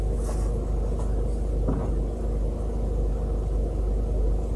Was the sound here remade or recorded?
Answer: recorded